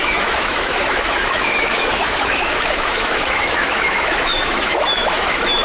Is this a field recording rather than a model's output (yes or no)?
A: no